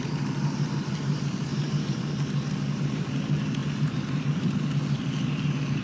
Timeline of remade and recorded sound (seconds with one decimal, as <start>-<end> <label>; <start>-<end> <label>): 0.0-1.5 recorded; 1.5-2.0 remade; 2.0-5.8 recorded